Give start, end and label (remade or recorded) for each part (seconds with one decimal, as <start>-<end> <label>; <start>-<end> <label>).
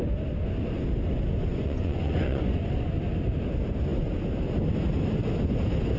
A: 0.0-1.5 recorded; 1.5-2.6 remade; 2.6-6.0 recorded